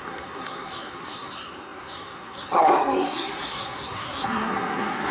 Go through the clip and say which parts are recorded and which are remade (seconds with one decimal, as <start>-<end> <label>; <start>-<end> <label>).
0.0-5.1 remade